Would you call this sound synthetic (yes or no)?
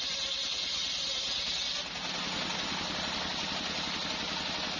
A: no